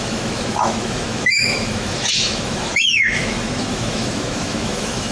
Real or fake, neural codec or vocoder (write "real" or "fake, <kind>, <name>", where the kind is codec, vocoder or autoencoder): fake, autoencoder, DAC-VAE